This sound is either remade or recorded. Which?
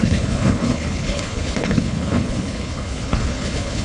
remade